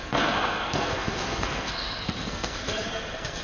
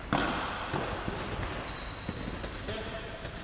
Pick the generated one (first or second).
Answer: first